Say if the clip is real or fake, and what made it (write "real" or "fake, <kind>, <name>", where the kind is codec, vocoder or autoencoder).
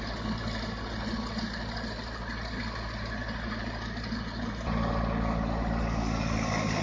real